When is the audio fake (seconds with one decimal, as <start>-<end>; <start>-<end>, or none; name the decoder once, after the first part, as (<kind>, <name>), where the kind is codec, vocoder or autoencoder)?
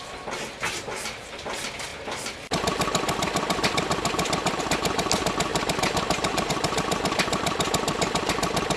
5.5-6.5 (vocoder, BigVGAN v2)